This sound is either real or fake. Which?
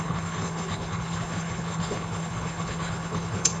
fake